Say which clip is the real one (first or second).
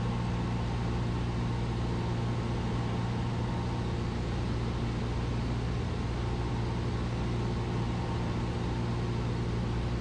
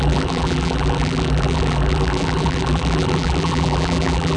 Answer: first